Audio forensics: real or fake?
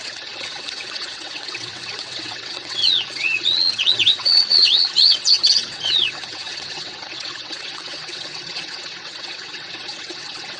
fake